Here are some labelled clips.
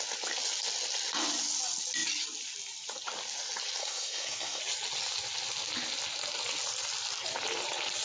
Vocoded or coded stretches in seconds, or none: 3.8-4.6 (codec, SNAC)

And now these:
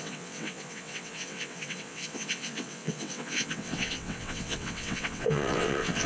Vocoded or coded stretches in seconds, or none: 0.0-6.1 (vocoder, WaveNeXt)

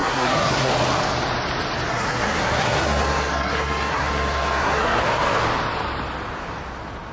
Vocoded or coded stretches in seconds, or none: 0.0-0.7 (codec, SNAC); 1.9-5.0

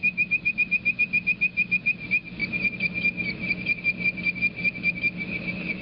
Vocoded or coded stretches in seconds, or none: 0.0-0.5 (autoencoder, DAC-VAE)

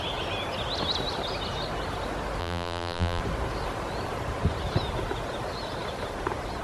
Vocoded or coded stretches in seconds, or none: 2.4-3.2 (vocoder, BigVGAN v2)